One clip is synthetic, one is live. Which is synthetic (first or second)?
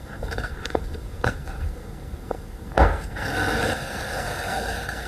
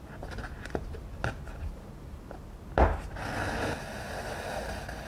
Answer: first